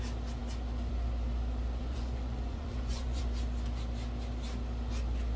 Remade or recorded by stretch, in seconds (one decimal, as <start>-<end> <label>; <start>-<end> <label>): 0.0-1.8 recorded; 1.8-3.2 remade; 3.2-5.4 recorded